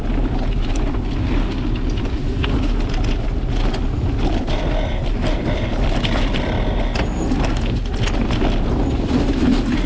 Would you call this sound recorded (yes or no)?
yes